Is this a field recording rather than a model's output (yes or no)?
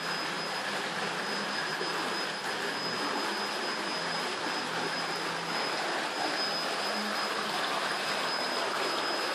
yes